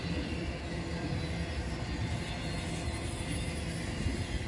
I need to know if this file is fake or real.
real